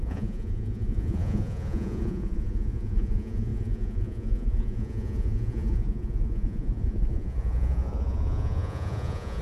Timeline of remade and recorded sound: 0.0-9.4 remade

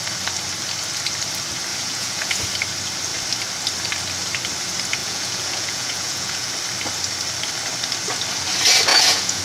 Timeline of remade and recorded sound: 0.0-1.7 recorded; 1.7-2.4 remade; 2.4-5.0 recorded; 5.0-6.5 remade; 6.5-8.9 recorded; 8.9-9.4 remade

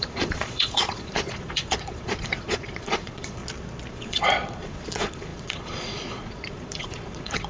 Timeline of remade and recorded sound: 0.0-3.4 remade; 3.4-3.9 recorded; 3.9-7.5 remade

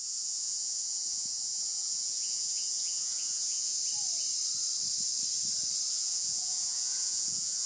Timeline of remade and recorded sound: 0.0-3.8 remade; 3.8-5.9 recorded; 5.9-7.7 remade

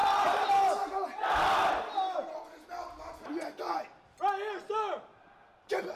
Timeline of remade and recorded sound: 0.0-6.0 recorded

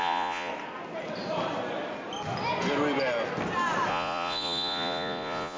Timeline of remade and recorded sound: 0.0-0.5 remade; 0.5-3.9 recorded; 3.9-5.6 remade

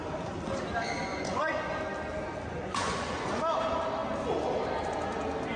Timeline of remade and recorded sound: 0.0-1.1 recorded; 1.1-1.8 remade; 1.8-2.6 recorded; 2.6-3.4 remade; 3.4-5.6 recorded

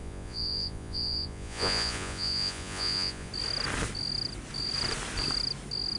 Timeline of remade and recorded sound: 0.0-3.3 remade; 3.3-6.0 recorded